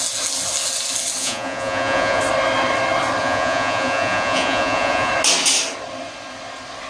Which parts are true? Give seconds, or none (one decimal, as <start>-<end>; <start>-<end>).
0.0-1.2; 2.2-3.2; 5.1-6.9